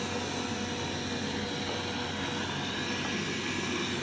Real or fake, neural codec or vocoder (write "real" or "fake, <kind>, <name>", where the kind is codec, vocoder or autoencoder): real